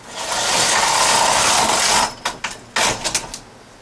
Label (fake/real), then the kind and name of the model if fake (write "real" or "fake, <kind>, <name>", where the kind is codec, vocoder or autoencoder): real